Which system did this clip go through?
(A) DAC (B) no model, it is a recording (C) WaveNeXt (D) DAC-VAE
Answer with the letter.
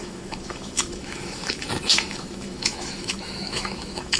D